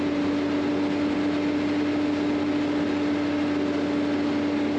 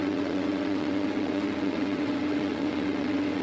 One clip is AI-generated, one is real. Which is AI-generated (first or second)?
second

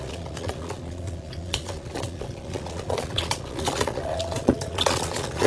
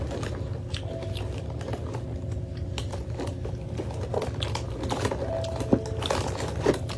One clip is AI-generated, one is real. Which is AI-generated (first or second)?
first